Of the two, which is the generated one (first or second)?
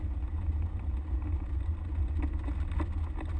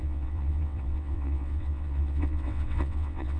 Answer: second